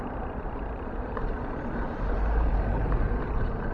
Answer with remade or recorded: remade